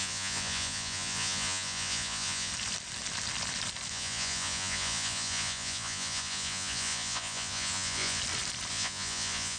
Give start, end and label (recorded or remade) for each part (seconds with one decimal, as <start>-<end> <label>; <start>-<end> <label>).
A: 0.0-2.5 remade; 2.5-3.9 recorded; 3.9-8.2 remade; 8.2-8.7 recorded; 8.7-9.6 remade